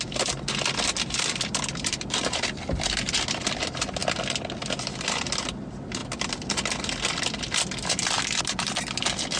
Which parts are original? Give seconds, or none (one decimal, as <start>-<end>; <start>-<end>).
none